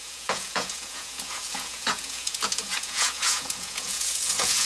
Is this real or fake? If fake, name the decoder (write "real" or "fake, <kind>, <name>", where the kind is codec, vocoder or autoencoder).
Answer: fake, vocoder, Vocos